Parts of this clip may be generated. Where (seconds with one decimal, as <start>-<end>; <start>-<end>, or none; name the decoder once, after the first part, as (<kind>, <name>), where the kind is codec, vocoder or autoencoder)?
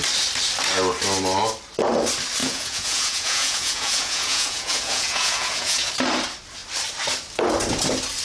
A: 2.4-5.9 (vocoder, Vocos)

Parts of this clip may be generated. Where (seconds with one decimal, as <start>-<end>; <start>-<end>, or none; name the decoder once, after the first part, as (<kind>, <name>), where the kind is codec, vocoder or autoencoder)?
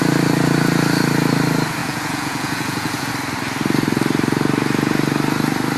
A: 1.8-3.1 (vocoder, Vocos)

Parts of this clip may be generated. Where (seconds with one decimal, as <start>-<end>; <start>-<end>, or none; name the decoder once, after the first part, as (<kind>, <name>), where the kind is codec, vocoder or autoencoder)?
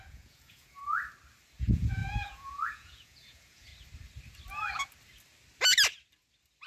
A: 0.0-0.8 (vocoder, Vocos); 1.6-3.7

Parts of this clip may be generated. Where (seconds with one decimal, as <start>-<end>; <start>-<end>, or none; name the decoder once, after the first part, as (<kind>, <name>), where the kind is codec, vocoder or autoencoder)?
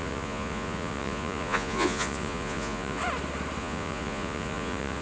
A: 0.0-3.0 (vocoder, Vocos); 3.6-5.0